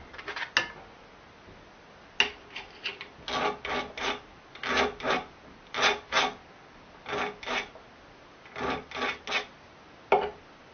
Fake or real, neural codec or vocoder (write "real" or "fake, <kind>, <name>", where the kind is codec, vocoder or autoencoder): real